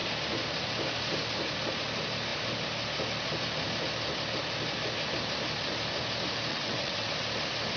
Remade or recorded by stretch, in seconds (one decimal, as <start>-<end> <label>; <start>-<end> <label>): 0.0-6.5 recorded; 6.5-7.1 remade; 7.1-7.8 recorded